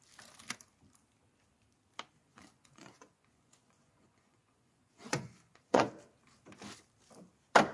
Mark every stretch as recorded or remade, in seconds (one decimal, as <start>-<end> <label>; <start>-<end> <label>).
0.0-2.2 recorded; 2.2-5.9 remade; 5.9-7.7 recorded